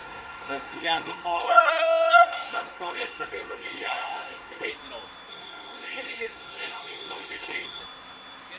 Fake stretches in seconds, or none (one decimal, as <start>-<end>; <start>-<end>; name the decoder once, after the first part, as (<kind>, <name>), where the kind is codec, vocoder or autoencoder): 0.0-4.7 (codec, SNAC); 5.3-7.8